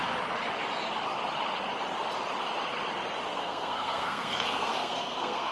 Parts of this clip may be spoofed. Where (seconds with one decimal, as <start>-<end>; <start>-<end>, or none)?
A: 3.3-5.5